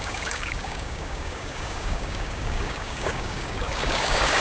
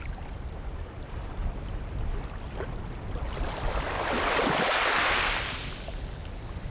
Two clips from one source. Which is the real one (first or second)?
second